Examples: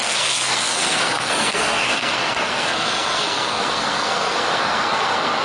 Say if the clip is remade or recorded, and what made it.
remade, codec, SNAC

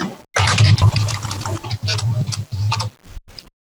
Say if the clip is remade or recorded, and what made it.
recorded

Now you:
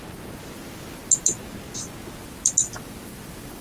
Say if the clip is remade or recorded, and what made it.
recorded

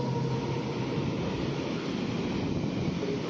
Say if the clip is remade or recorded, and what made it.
recorded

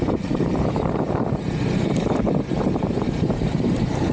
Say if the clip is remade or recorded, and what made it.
remade, vocoder, BigVGAN v2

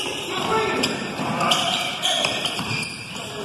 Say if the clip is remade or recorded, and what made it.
remade, vocoder, BigVGAN v2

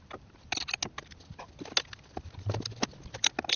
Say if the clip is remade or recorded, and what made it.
recorded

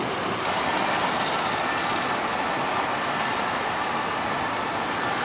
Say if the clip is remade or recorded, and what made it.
recorded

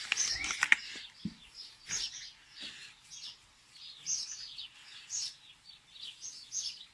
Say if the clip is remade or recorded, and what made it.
recorded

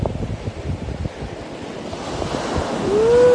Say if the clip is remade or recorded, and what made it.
recorded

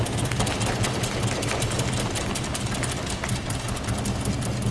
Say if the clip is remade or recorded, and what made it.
recorded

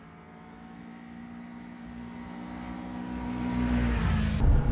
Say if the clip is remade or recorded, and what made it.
recorded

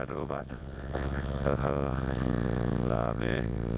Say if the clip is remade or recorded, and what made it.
remade, vocoder, WaveNeXt